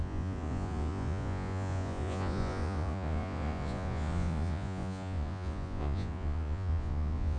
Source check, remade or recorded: remade